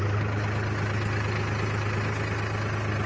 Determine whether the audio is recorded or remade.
recorded